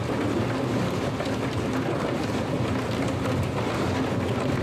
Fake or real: real